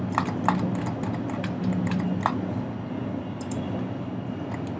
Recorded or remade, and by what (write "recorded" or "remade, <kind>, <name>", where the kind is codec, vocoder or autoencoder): recorded